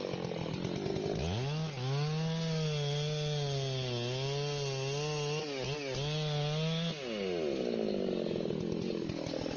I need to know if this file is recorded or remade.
recorded